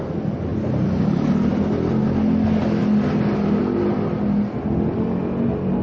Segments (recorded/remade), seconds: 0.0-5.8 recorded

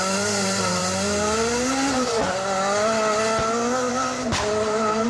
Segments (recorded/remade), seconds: 0.0-5.1 recorded

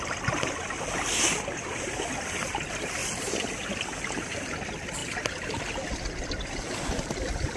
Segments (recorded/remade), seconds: 0.0-7.6 recorded